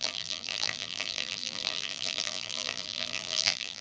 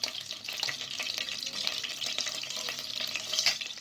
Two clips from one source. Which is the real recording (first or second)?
second